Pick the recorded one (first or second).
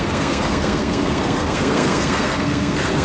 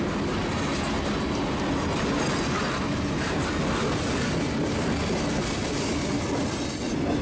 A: second